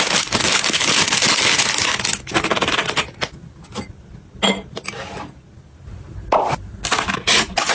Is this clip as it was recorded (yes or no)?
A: yes